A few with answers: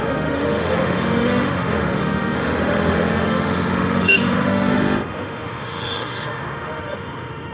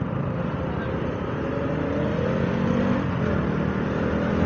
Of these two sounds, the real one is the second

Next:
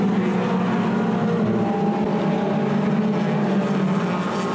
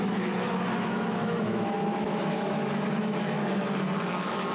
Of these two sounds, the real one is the first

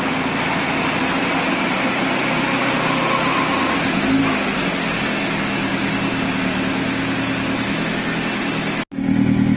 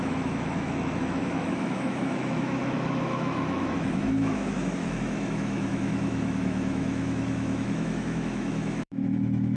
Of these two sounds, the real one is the first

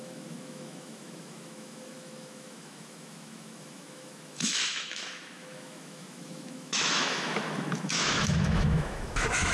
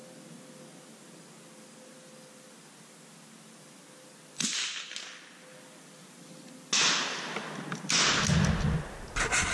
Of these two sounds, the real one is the second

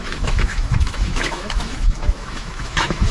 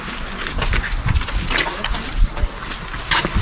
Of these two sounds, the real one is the second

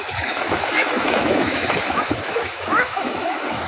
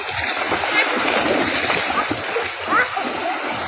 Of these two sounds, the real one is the second